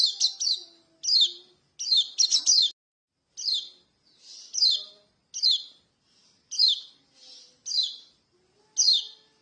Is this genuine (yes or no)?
yes